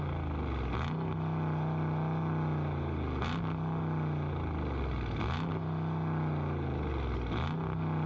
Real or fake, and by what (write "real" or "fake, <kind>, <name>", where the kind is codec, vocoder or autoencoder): real